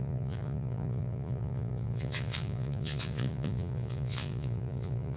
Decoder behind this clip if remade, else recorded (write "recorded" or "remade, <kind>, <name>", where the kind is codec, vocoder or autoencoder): remade, vocoder, Vocos